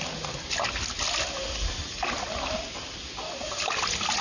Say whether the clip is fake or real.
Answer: real